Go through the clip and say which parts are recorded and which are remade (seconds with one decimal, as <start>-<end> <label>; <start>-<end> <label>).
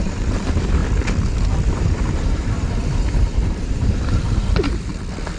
0.0-0.8 remade; 0.8-1.7 recorded; 1.7-4.9 remade; 4.9-5.4 recorded